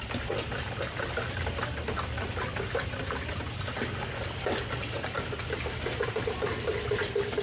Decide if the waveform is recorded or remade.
recorded